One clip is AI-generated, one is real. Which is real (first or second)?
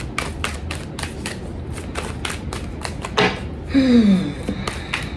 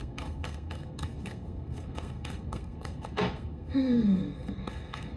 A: first